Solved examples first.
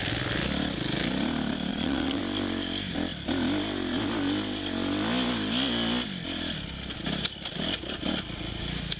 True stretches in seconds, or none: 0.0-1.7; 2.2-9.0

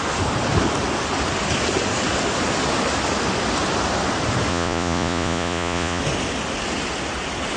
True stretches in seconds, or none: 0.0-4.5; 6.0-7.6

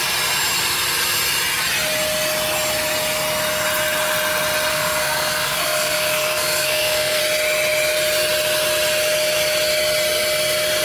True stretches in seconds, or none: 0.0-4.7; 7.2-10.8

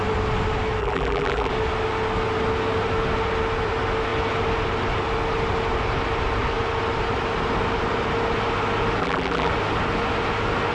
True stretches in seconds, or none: 0.0-0.8; 1.5-9.0; 9.5-10.7

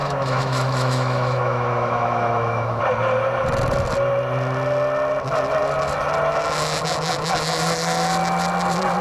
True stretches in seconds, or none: 2.8-9.0